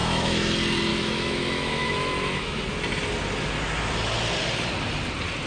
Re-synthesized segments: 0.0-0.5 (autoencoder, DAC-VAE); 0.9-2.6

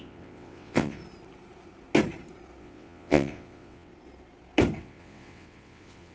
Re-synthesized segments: 0.0-1.0 (vocoder, WaveNeXt); 2.6-3.9; 4.8-6.1

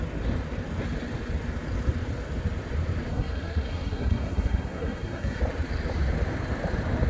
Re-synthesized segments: 3.1-5.4 (codec, SNAC)

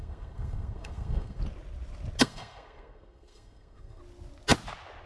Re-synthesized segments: 0.0-1.4 (codec, SNAC); 2.2-4.0

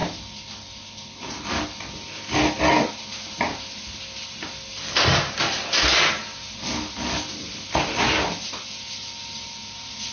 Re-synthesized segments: none

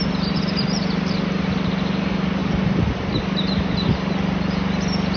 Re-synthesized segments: none

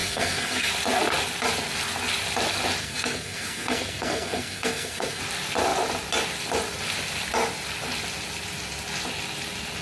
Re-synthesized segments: 0.0-0.7 (codec, SNAC); 2.8-5.2

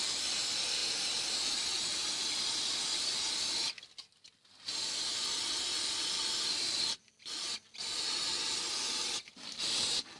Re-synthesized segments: none